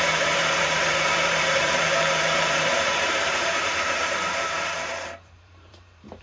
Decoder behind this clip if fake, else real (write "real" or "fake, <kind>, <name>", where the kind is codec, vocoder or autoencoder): fake, vocoder, BigVGAN v2